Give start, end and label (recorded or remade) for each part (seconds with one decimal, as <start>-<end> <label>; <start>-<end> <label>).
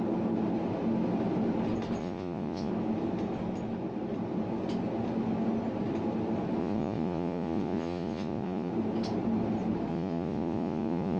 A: 0.0-2.0 recorded; 2.0-2.7 remade; 2.7-6.6 recorded; 6.6-8.7 remade; 8.7-9.9 recorded; 9.9-11.2 remade